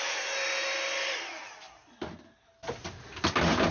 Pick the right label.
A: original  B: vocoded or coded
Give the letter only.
A